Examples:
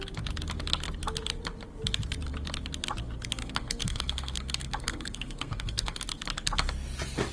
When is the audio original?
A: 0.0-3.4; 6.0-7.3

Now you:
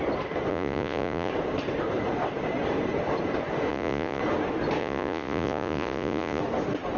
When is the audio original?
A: 0.0-0.5; 1.3-3.7; 4.2-4.8; 6.4-7.0

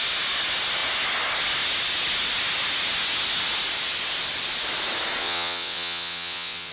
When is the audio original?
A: 0.0-5.2

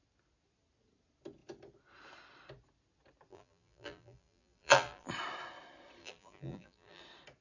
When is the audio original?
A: 0.0-3.3; 5.1-6.0; 7.0-7.4

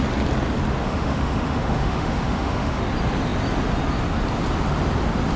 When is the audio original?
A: 0.0-0.8; 2.8-5.4

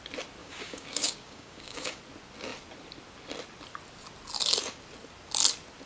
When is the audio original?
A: 0.0-0.4; 2.0-5.9

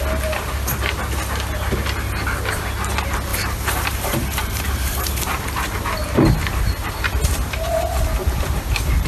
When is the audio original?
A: 0.0-3.3; 6.9-8.2